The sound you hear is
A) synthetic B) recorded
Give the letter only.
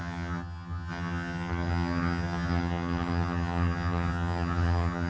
A